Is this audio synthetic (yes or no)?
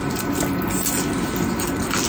no